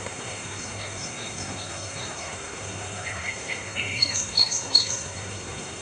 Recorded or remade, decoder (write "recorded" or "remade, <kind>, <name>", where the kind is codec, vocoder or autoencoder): remade, codec, SNAC